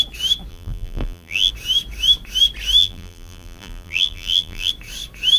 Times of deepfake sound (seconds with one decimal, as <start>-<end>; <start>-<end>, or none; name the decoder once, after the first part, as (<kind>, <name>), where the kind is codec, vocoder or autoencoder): 0.5-1.5 (vocoder, BigVGAN v2); 2.8-4.7

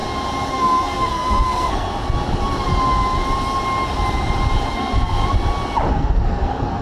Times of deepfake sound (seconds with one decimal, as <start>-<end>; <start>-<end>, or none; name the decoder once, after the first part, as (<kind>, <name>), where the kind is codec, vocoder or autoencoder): 0.5-1.9 (codec, SNAC); 4.7-5.2; 5.9-6.8